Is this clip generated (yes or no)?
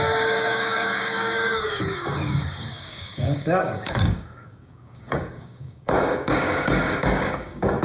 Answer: yes